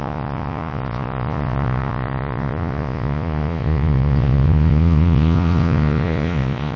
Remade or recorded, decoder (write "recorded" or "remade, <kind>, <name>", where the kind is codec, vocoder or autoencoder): remade, vocoder, Vocos